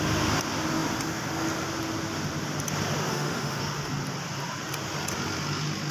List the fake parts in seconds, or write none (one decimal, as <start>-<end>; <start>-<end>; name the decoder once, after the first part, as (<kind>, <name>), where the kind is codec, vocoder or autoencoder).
3.1-3.6 (autoencoder, DAC-VAE)